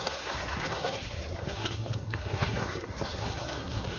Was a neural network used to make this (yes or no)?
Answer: yes